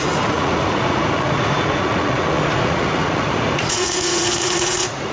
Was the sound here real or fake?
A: fake